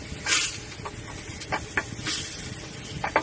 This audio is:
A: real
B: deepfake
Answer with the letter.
A